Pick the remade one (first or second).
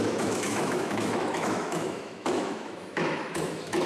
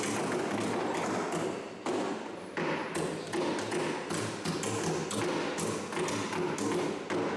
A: first